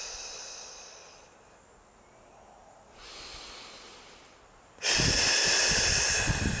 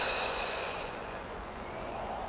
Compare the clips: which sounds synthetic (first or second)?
second